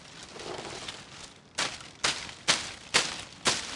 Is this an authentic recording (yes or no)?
yes